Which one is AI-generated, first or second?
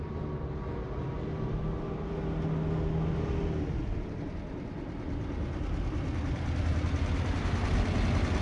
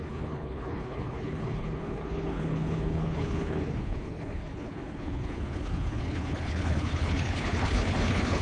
second